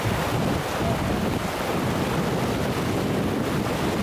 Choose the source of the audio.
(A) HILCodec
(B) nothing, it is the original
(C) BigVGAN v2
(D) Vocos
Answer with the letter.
B